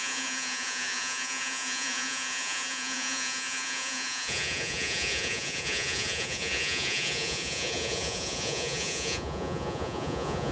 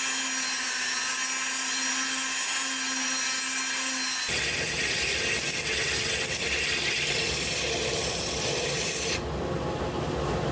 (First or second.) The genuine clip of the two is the second